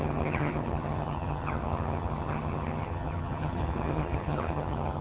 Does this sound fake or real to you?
fake